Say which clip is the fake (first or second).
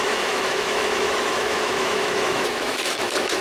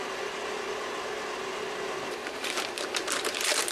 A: first